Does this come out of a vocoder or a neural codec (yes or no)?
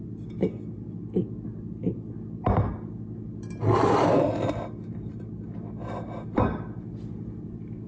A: no